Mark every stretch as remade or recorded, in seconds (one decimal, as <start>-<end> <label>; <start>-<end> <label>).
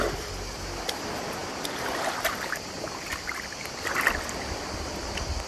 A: 0.0-5.5 recorded